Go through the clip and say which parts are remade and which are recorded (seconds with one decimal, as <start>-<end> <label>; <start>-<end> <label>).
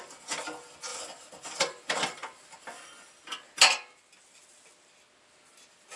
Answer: 0.0-0.9 recorded; 0.9-4.0 remade; 4.0-6.0 recorded